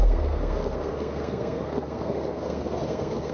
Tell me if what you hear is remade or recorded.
remade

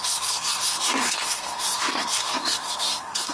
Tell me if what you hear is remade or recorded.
remade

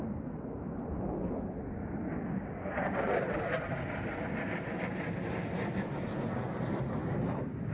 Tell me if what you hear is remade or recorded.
recorded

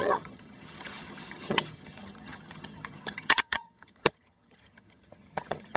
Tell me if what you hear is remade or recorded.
remade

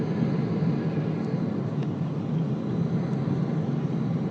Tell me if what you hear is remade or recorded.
recorded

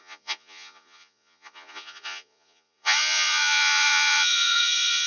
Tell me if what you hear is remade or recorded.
remade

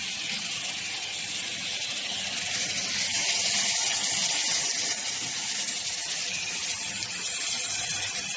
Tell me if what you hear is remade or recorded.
recorded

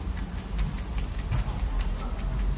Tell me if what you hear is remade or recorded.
recorded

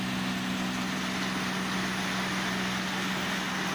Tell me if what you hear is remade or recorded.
recorded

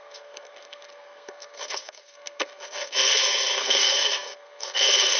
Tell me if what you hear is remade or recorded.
remade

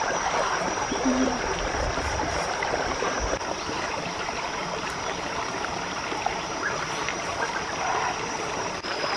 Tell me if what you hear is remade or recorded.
remade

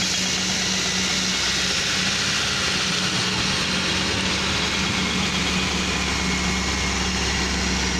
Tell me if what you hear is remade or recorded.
recorded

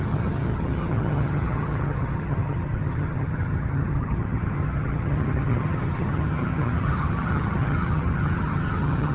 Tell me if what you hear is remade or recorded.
remade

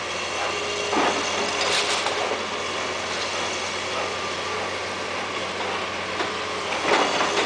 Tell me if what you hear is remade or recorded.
recorded